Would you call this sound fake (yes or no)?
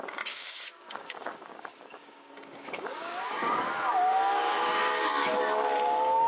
yes